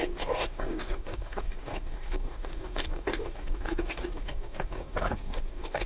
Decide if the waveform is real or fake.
fake